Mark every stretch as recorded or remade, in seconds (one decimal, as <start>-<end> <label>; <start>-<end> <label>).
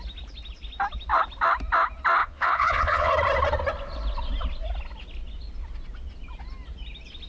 0.0-2.2 recorded; 2.2-3.1 remade; 3.1-7.3 recorded